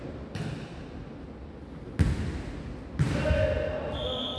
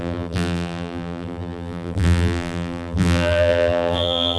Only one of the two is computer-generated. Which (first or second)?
second